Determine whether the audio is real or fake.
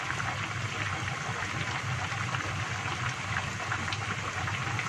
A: real